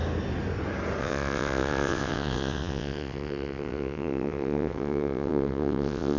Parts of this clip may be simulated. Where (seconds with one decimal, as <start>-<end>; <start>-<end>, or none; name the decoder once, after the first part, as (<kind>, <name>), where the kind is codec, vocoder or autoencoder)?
1.0-6.2 (vocoder, WaveNeXt)